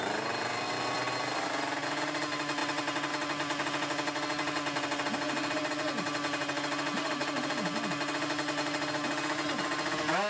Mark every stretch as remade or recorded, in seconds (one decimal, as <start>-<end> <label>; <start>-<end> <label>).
0.0-10.3 recorded